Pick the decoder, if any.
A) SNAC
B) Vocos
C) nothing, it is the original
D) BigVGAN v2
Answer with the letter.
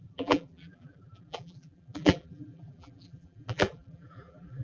D